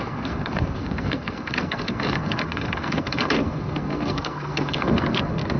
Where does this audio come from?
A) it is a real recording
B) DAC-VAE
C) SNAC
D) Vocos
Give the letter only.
C